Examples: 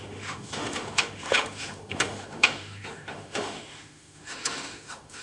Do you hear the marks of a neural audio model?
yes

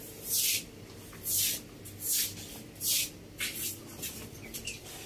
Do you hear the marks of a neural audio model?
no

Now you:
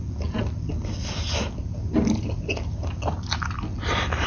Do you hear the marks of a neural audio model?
no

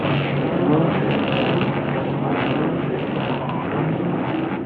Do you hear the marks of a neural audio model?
no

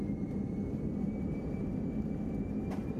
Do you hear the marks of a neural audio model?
yes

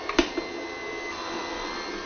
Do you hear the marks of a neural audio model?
no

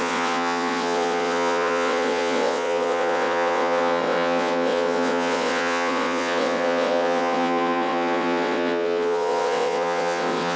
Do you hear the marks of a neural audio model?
yes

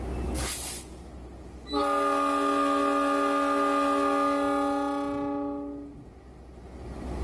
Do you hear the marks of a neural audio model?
no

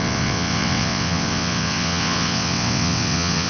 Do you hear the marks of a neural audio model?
yes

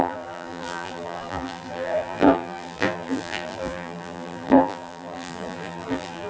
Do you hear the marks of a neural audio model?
yes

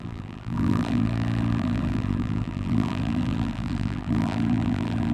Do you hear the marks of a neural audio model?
yes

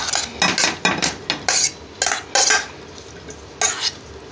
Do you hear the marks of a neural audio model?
no